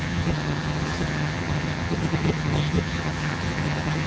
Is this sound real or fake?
fake